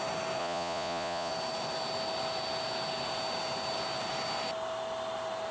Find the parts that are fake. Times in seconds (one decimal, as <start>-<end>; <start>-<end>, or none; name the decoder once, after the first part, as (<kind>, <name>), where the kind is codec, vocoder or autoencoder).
0.4-1.3 (vocoder, Vocos)